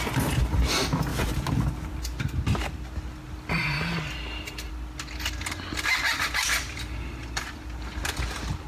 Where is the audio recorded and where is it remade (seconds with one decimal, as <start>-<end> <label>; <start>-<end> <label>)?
0.0-8.7 recorded